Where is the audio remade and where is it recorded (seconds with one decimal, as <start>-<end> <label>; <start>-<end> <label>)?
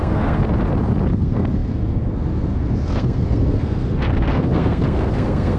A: 0.0-0.4 remade; 0.4-1.1 recorded; 1.1-5.6 remade